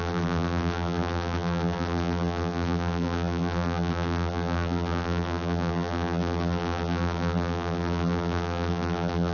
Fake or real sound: fake